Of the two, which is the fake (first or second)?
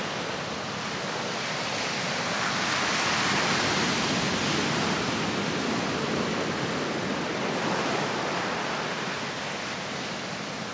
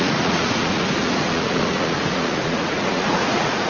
second